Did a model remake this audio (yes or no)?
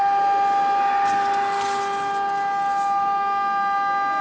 no